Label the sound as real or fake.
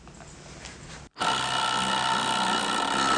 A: real